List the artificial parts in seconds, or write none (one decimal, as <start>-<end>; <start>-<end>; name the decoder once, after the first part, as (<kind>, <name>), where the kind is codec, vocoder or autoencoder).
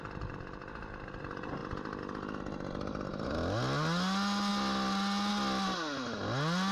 none